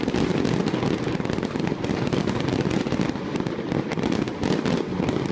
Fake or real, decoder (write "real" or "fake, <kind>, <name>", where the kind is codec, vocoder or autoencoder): real